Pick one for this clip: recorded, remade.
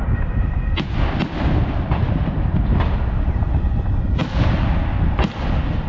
recorded